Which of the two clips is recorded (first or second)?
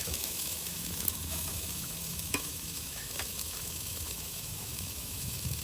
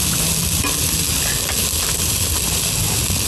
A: second